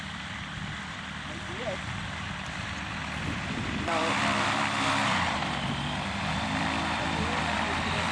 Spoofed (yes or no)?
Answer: yes